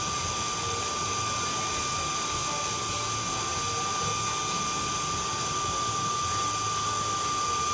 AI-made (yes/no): no